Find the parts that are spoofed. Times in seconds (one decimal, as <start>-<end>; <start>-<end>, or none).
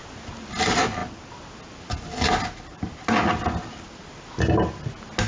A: none